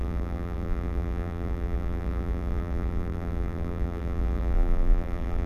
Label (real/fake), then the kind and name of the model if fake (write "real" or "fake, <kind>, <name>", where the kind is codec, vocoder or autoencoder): fake, vocoder, BigVGAN v2